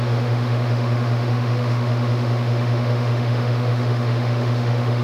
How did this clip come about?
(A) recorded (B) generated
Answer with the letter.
B